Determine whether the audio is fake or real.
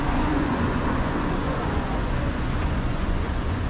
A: fake